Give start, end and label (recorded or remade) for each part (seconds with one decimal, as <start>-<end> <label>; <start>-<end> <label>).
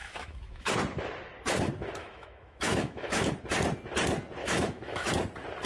0.0-0.7 remade; 0.7-2.0 recorded; 2.0-3.3 remade; 3.3-4.4 recorded; 4.4-5.1 remade; 5.1-5.7 recorded